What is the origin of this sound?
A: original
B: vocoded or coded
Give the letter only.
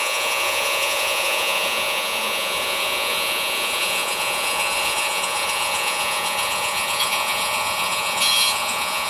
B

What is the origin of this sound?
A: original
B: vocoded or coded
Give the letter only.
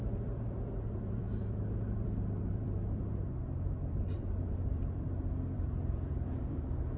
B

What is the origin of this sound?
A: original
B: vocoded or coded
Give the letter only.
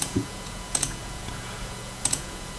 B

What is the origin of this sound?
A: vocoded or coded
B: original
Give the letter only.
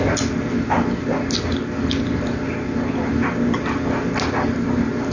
B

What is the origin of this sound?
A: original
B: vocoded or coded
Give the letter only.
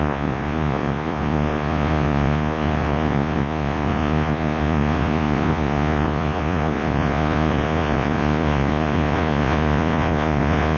B